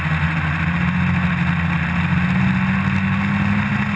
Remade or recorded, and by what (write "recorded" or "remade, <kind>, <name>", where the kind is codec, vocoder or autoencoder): recorded